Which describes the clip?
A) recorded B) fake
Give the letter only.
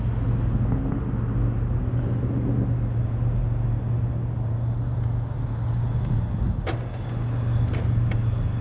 A